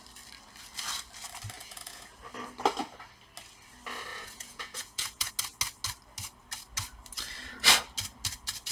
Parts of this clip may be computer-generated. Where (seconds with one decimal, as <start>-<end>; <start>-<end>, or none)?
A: 1.6-2.2; 4.1-5.3